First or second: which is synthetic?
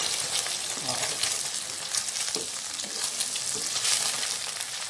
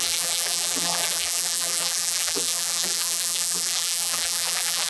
second